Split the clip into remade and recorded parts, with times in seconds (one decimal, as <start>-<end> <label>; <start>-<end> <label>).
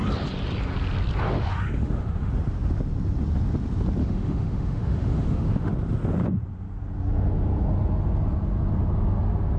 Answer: 0.0-1.2 recorded; 1.2-2.3 remade; 2.3-4.0 recorded; 4.0-5.7 remade; 5.7-9.6 recorded